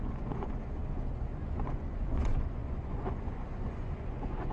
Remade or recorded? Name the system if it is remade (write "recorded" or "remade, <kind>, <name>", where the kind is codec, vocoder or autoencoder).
remade, vocoder, Vocos